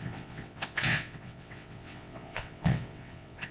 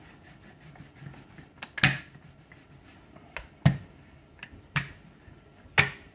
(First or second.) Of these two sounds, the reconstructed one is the first